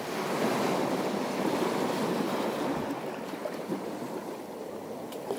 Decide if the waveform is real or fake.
real